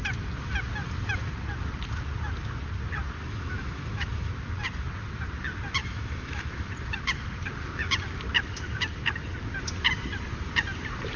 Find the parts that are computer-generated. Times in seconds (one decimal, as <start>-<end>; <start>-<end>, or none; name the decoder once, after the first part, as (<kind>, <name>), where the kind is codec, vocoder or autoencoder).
3.2-4.3 (autoencoder, DAC-VAE); 5.8-6.7